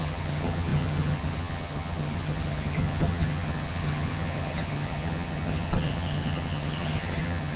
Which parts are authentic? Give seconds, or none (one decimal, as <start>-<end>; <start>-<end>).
none